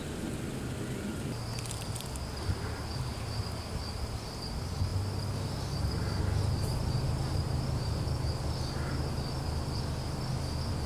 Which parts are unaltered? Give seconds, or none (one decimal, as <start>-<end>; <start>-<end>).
0.0-10.9

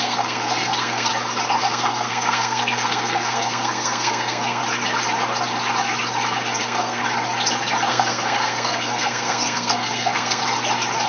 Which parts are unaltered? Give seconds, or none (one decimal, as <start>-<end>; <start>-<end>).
1.1-1.6; 4.6-6.6; 7.0-7.9; 10.4-11.1